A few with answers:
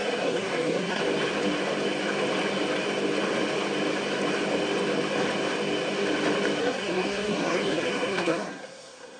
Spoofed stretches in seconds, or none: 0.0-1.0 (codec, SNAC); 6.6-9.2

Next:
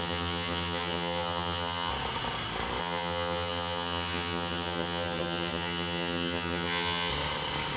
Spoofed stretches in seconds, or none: 0.0-1.9 (vocoder, HiFi-GAN); 2.8-7.1

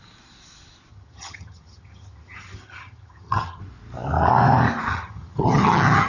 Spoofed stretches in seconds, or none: 0.9-3.6 (vocoder, HiFi-GAN); 4.9-6.1